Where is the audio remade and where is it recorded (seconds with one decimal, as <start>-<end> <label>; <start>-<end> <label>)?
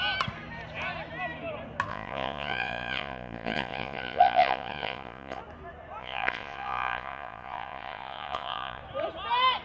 0.0-1.9 recorded; 1.9-5.4 remade; 5.4-6.0 recorded; 6.0-8.8 remade; 8.8-9.6 recorded